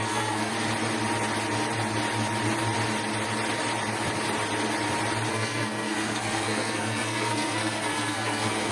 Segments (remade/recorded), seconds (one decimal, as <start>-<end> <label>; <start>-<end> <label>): 0.0-0.5 remade; 0.5-5.3 recorded; 5.3-8.7 remade